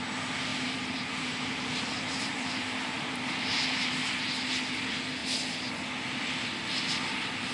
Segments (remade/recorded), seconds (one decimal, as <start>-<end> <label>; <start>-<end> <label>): 0.0-0.5 recorded; 0.5-3.9 remade; 3.9-7.5 recorded